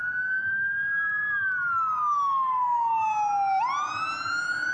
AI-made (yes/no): no